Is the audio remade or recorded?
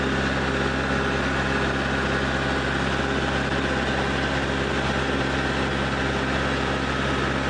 recorded